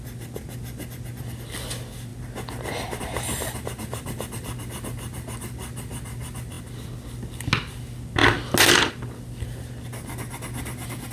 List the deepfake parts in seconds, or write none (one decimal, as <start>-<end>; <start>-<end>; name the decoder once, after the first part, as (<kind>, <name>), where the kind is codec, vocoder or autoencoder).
none

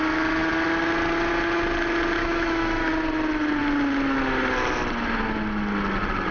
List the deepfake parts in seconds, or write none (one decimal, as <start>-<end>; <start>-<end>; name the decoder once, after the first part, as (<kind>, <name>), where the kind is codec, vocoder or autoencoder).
2.2-2.9 (autoencoder, DAC-VAE)